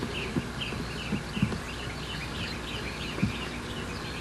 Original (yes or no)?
yes